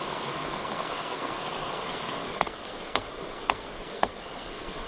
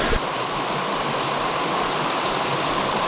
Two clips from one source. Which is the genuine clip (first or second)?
second